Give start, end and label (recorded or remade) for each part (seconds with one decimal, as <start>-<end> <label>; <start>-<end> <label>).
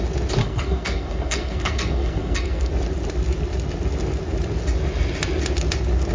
0.0-0.4 recorded; 0.4-2.7 remade; 2.7-6.1 recorded